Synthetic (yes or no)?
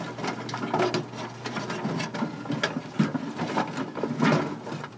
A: no